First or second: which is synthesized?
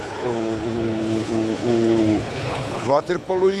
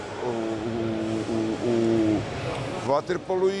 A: first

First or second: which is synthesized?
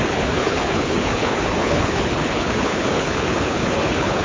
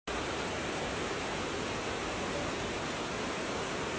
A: first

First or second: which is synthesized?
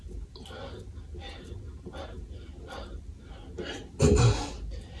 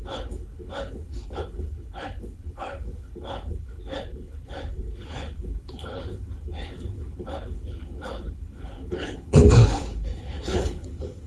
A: second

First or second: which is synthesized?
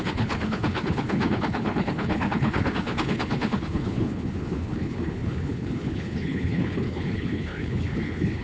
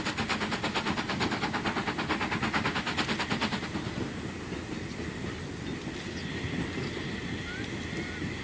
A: first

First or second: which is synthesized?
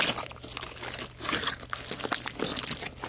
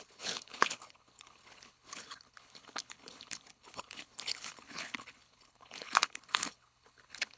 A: second